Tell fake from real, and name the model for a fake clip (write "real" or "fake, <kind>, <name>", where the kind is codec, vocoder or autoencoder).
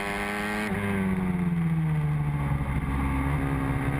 real